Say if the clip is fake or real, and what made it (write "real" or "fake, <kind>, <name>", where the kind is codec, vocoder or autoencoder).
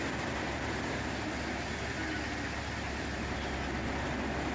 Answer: real